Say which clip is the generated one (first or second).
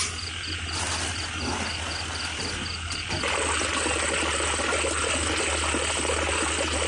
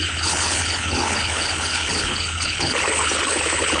second